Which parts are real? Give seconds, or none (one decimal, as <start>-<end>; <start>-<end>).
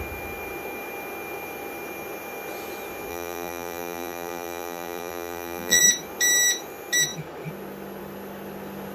0.0-3.1; 5.8-8.9